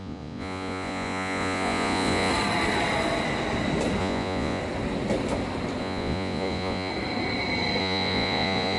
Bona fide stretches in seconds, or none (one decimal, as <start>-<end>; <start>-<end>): 2.3-4.0; 4.6-5.8; 6.9-7.8